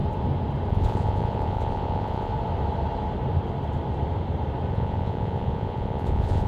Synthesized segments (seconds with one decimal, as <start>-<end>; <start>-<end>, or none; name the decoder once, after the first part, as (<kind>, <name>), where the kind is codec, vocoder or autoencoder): 0.7-2.3 (vocoder, Vocos); 4.7-6.5